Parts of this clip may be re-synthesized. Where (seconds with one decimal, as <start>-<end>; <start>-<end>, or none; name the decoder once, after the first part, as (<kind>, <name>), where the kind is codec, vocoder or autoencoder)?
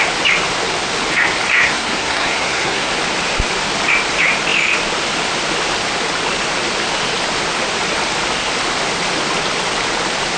1.5-2.9 (codec, SNAC)